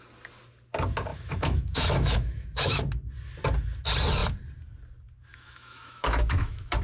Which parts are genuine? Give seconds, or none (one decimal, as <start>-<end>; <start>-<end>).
0.0-1.1; 2.8-5.3